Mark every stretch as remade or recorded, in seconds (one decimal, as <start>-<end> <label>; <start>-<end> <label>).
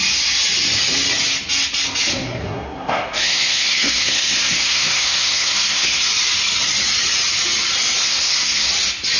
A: 0.0-2.1 recorded; 2.1-6.0 remade; 6.0-8.0 recorded; 8.0-8.7 remade; 8.7-9.2 recorded